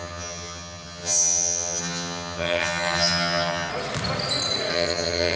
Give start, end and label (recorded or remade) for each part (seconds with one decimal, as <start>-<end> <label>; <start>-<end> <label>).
0.0-3.7 remade; 3.7-4.7 recorded; 4.7-5.4 remade